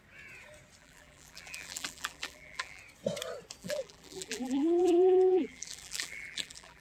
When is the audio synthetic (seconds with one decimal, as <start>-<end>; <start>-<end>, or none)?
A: 0.8-2.8; 3.6-6.8